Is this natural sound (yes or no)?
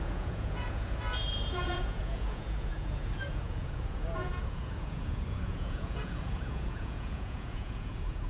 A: no